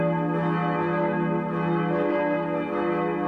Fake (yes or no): no